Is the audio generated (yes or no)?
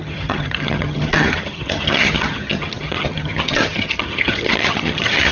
yes